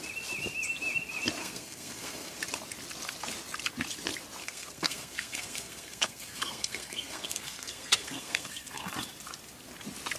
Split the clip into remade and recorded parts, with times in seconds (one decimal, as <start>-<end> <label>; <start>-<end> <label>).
0.0-1.4 recorded; 1.4-2.4 remade; 2.4-4.4 recorded; 4.4-8.9 remade; 8.9-10.2 recorded